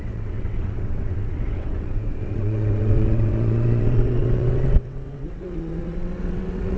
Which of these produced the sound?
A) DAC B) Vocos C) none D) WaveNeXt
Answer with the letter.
D